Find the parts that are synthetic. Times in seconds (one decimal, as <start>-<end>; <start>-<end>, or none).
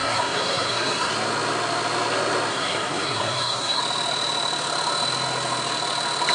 0.0-1.1; 2.5-3.8